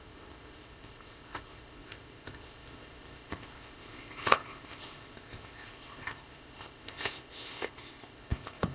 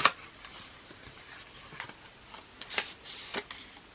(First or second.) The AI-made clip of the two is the first